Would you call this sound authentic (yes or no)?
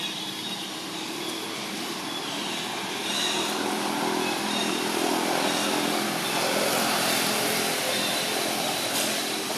no